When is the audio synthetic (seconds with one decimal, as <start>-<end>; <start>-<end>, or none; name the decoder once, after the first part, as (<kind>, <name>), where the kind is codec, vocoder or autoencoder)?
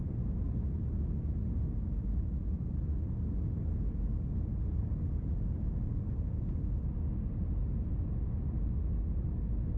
4.8-6.5 (vocoder, BigVGAN v2)